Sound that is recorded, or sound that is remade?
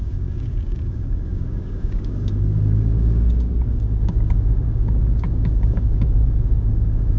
remade